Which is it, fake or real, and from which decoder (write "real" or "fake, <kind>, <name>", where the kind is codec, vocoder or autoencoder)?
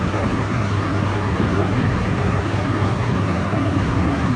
fake, codec, SNAC